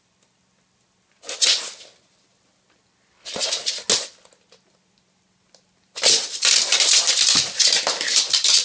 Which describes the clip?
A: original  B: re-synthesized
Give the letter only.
A